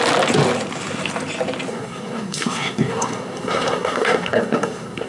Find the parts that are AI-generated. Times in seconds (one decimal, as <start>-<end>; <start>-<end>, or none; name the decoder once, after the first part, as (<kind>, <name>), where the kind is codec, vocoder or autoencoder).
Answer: 1.7-5.1 (codec, SNAC)

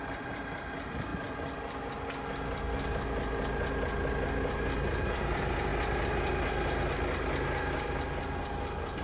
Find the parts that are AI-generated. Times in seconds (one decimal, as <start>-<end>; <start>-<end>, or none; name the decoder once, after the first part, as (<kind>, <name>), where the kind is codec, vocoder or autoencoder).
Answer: none

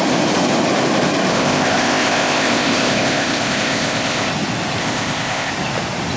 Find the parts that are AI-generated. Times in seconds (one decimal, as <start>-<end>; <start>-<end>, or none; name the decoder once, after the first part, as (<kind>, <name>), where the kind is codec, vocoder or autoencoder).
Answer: 1.3-4.3 (codec, ZipCodec); 4.8-5.5

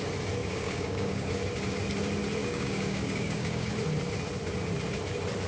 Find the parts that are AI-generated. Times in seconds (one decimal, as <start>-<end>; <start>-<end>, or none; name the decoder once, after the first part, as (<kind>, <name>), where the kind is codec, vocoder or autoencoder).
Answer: 0.4-1.3 (codec, DAC); 2.4-3.7